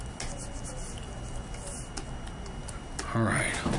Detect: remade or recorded recorded